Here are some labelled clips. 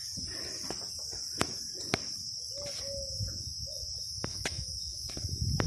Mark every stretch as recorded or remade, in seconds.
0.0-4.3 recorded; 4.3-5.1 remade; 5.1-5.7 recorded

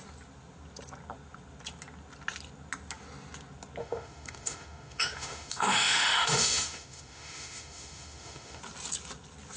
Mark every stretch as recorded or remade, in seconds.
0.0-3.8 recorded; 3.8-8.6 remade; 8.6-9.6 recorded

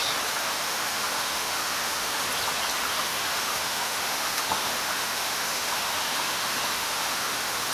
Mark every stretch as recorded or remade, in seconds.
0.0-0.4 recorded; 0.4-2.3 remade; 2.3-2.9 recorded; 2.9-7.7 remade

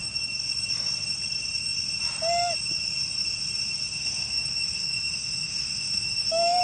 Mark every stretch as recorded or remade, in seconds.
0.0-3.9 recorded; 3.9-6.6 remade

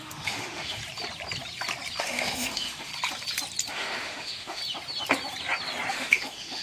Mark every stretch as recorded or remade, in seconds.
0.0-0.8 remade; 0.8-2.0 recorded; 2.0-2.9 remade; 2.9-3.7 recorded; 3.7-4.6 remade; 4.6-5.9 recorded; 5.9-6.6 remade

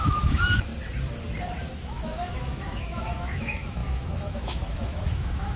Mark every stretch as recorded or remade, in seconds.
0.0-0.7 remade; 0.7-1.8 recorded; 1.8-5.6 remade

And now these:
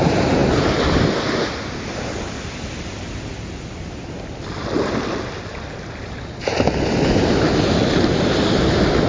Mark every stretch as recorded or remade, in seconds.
0.0-9.1 recorded

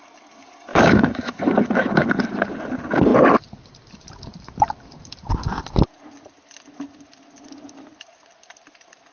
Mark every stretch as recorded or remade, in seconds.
0.0-0.7 recorded; 0.7-2.1 remade; 2.1-9.1 recorded